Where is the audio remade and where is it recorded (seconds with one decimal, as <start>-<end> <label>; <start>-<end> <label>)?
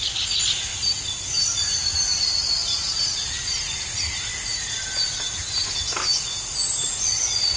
0.0-0.7 recorded; 0.7-4.0 remade; 4.0-7.6 recorded